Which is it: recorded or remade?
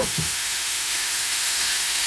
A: remade